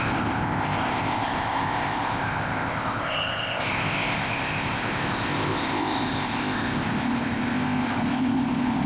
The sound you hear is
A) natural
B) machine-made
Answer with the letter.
B